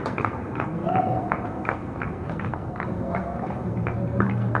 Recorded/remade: remade